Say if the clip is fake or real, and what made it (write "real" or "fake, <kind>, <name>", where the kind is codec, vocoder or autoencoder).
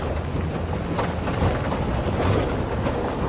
real